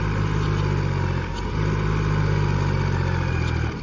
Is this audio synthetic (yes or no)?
no